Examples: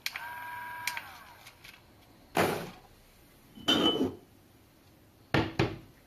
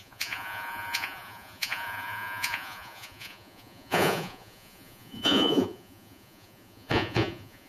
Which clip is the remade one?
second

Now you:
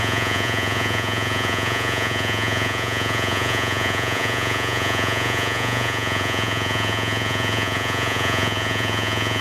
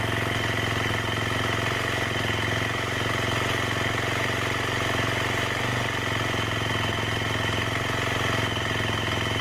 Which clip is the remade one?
first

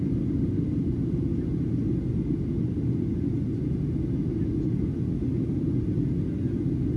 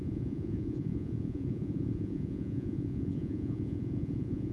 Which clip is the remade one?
second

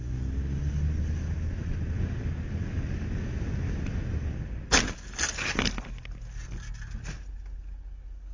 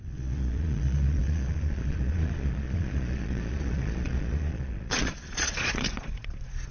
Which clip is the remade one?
second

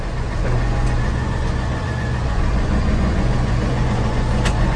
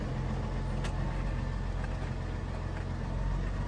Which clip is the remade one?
first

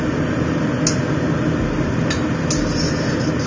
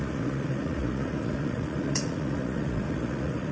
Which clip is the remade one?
second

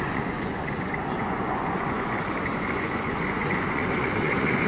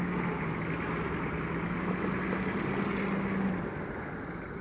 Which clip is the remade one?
first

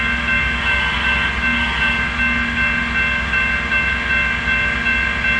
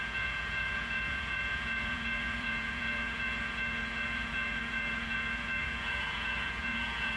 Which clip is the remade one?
second